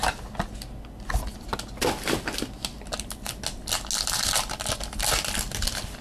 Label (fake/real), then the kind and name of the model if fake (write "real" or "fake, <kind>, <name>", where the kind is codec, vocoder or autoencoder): real